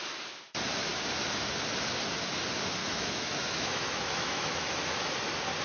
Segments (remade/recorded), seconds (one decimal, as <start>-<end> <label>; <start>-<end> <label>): 0.0-2.8 recorded; 2.8-5.1 remade; 5.1-5.6 recorded